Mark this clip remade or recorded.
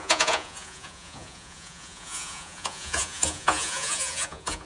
remade